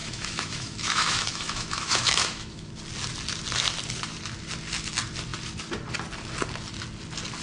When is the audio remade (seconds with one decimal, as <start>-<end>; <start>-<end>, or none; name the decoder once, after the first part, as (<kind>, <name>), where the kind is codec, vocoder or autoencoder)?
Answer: 0.0-2.7 (autoencoder, DAC-VAE)